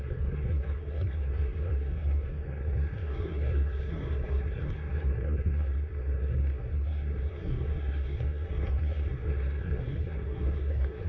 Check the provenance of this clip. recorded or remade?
remade